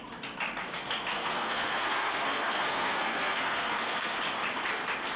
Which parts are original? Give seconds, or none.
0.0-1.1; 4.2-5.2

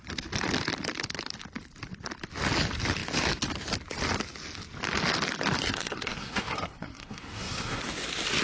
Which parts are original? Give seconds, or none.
0.0-5.6; 7.8-8.4

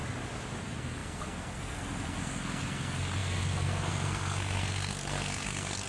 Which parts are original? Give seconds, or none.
0.0-0.6

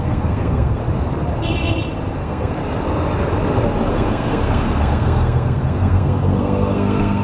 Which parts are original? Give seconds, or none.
0.8-2.2; 2.6-3.9

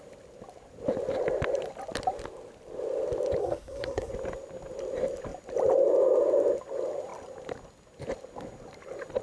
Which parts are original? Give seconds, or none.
0.0-3.4; 4.1-9.2

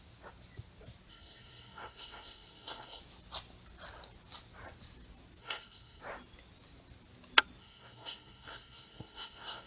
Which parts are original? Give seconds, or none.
0.0-1.1; 3.0-5.4; 6.0-7.6

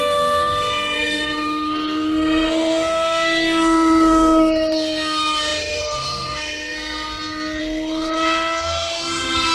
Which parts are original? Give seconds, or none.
none